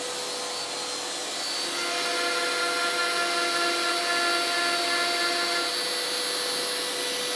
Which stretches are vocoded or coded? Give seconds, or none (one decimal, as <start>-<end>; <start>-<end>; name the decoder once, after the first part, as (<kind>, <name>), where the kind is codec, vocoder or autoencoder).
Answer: none